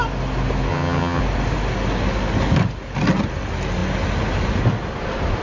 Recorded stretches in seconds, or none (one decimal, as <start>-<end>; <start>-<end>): 0.0-0.7; 1.2-5.4